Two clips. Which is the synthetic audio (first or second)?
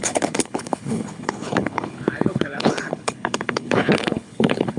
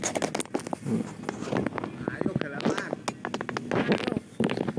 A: first